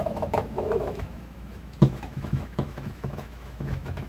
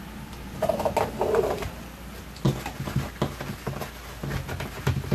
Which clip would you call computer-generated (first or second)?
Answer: first